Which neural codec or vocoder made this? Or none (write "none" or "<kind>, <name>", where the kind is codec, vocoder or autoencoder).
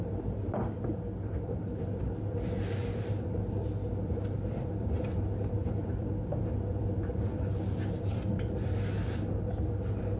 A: vocoder, BigVGAN v2